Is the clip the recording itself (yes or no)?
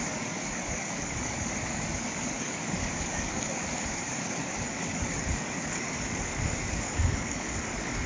no